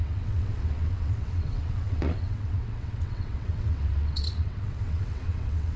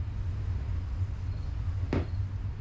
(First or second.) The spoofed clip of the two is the first